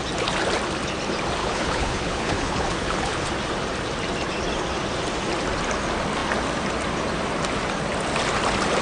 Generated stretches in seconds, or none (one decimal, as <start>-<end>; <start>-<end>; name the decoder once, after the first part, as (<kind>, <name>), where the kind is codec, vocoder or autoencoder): 1.4-3.3 (codec, HILCodec)